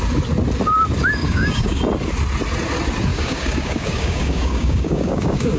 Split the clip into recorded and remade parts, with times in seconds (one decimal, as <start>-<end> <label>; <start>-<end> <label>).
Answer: 0.0-1.2 recorded; 1.2-1.8 remade; 1.8-3.1 recorded; 3.1-5.6 remade